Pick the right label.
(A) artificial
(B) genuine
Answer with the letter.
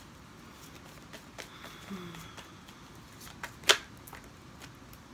B